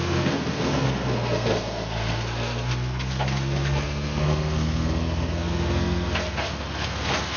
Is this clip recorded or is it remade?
remade